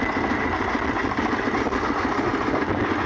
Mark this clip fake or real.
real